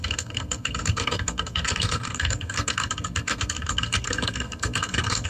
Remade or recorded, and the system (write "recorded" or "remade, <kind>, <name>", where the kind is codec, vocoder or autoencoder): remade, codec, SNAC